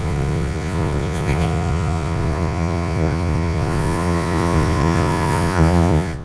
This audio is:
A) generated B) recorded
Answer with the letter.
A